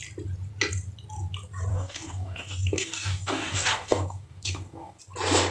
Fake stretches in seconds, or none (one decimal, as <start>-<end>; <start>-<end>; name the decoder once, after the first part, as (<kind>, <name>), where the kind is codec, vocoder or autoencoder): 1.7-5.0 (codec, DAC)